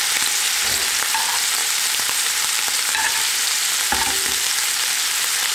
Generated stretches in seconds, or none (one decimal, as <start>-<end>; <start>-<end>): 1.6-4.9